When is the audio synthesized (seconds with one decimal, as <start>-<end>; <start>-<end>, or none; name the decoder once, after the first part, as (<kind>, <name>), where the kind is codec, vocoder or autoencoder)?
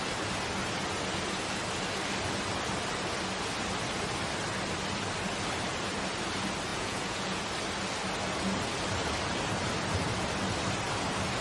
6.7-7.4 (vocoder, Vocos)